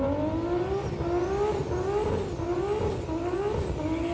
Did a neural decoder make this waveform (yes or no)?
no